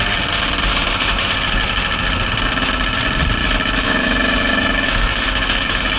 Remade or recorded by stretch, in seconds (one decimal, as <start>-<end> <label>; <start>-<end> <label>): 0.0-0.7 recorded; 0.7-1.3 remade; 1.3-3.4 recorded; 3.4-6.0 remade